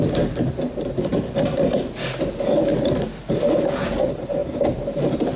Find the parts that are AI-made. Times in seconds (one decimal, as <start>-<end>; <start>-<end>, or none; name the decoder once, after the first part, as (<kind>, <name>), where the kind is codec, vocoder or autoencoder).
none

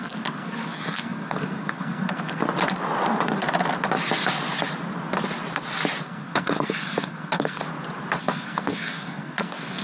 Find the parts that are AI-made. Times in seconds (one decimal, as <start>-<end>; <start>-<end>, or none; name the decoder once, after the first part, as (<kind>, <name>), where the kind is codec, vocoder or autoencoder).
0.0-2.4 (codec, SNAC); 6.0-7.6; 8.2-9.8

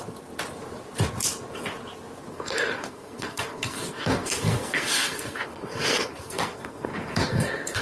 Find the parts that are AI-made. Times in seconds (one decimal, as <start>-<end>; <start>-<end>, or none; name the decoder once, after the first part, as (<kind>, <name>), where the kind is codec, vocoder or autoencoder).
2.3-7.8 (codec, SNAC)

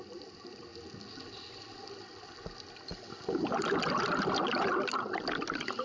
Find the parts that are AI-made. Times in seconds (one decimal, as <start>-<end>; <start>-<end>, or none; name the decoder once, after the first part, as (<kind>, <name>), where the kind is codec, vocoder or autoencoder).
none

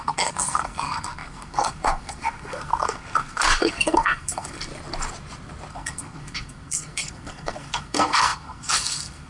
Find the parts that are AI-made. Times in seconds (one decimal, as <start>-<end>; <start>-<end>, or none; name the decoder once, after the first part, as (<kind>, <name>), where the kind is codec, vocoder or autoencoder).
0.0-4.7 (codec, SNAC); 5.7-9.3

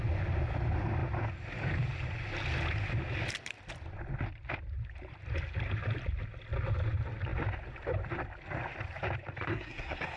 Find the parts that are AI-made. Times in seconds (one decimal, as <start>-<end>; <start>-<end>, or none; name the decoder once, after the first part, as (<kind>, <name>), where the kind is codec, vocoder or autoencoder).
9.5-10.2 (codec, SNAC)